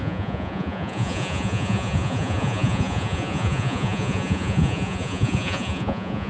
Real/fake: fake